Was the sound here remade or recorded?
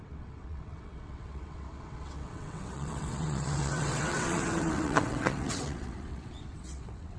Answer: remade